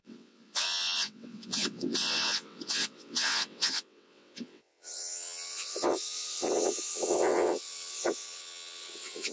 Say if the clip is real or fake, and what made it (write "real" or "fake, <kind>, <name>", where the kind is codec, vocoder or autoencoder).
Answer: fake, vocoder, WaveNeXt